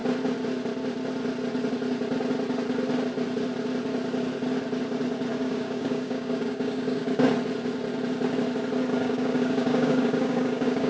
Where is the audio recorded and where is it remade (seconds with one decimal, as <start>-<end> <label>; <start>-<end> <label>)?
0.0-5.3 recorded; 5.3-7.3 remade; 7.3-8.9 recorded; 8.9-10.9 remade